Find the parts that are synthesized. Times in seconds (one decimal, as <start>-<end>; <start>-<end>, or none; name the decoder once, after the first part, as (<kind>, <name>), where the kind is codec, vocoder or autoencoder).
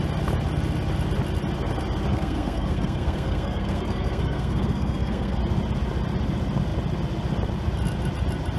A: 2.1-5.4 (codec, SNAC)